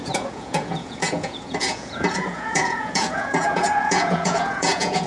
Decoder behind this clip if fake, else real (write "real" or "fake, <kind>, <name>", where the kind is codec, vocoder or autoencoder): fake, vocoder, Vocos